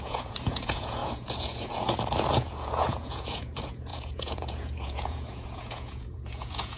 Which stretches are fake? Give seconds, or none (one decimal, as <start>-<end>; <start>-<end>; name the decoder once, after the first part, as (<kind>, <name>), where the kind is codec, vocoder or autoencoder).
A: 0.0-6.8 (vocoder, Vocos)